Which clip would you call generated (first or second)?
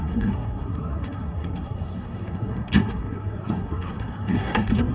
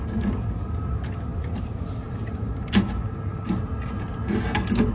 first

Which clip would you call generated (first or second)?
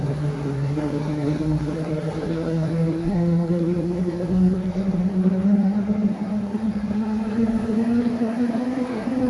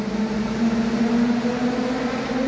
first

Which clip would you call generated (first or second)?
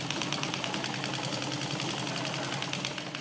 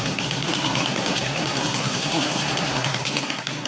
second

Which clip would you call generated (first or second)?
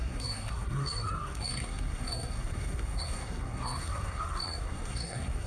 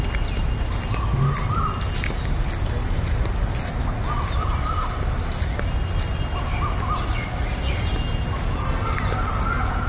first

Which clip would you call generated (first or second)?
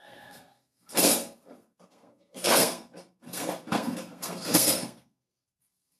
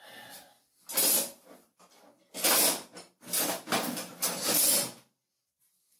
first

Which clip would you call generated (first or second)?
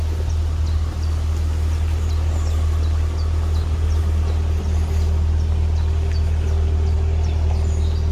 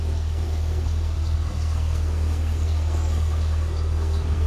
second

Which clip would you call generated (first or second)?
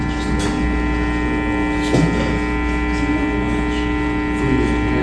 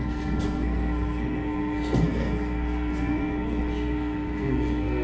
second